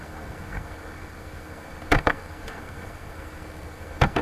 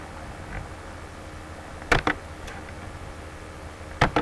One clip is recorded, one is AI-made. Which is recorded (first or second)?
second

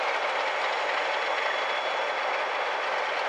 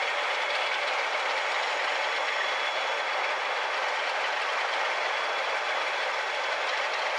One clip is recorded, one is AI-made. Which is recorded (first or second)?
first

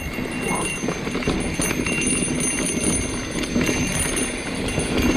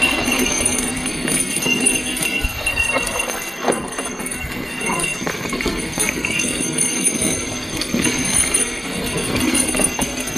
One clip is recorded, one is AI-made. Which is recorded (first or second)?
first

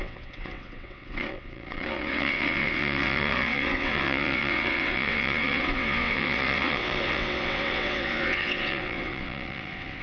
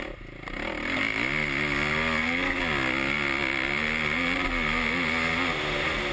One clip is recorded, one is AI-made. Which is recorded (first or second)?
second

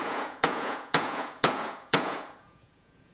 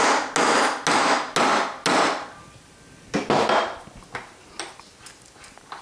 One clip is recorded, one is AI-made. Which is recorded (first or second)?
second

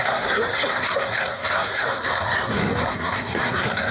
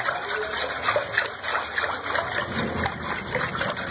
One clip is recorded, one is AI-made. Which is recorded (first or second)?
second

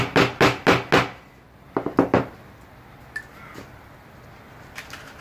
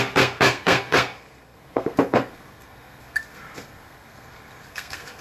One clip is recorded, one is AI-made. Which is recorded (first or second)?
first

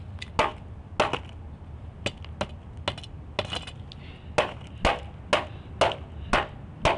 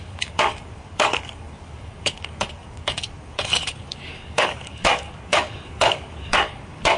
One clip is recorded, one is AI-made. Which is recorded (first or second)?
first